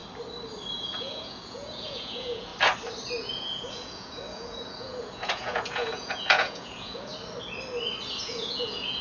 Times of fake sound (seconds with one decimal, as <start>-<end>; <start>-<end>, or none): 0.7-2.5; 3.2-7.1; 8.2-9.0